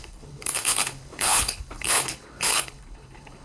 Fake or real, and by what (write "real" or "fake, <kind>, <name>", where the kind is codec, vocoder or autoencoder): fake, codec, HILCodec